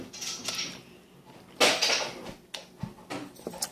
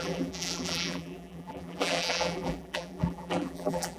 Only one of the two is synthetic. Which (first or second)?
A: second